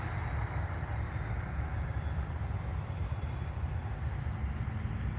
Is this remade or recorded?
recorded